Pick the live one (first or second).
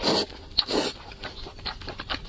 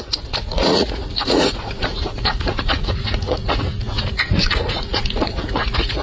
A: first